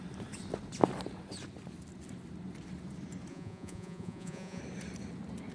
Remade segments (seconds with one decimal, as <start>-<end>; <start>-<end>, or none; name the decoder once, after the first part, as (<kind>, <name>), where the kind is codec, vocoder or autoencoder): 3.3-4.6 (vocoder, Vocos)